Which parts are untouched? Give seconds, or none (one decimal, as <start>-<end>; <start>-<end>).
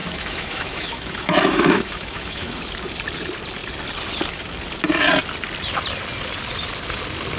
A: 2.6-7.4